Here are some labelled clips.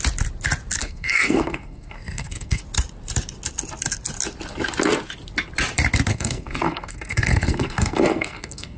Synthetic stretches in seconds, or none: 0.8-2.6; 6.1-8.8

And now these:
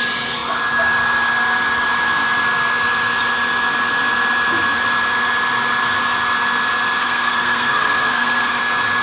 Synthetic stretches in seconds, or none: 7.0-8.6

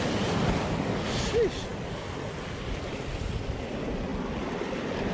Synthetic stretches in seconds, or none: none